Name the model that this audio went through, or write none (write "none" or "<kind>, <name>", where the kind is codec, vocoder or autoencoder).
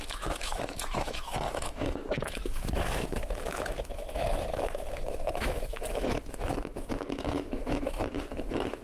autoencoder, DAC-VAE